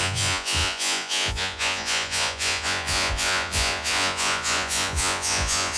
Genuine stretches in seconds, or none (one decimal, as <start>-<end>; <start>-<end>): none